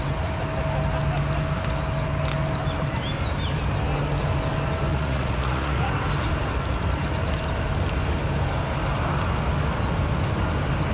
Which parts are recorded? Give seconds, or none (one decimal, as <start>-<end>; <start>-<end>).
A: 0.0-4.9; 5.9-10.9